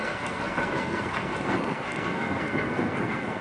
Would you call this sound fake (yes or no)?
yes